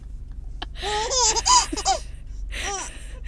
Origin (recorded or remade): recorded